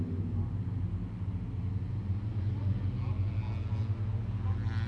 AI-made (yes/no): no